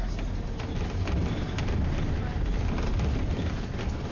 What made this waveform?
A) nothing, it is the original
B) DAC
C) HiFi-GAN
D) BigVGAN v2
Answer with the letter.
A